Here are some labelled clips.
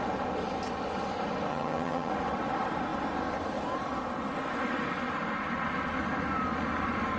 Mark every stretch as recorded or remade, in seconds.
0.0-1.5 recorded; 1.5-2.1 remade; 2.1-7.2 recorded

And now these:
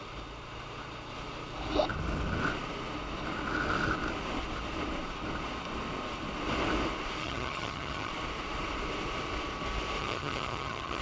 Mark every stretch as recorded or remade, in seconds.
0.0-7.2 recorded; 7.2-8.1 remade; 8.1-10.0 recorded; 10.0-11.0 remade